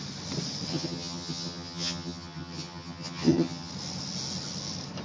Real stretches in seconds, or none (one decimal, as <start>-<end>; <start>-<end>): 0.0-0.7; 3.7-5.0